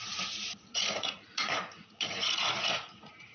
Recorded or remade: remade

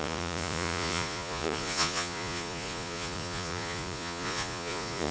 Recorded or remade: remade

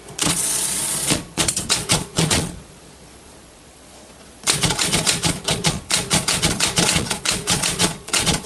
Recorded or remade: remade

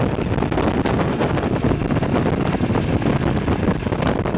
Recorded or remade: recorded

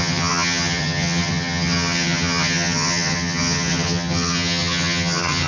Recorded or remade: remade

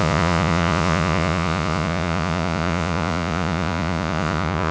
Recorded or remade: remade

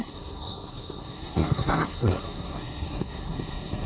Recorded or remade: remade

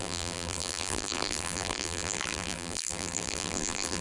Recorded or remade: remade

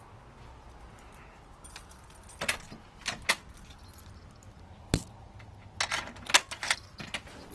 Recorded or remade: recorded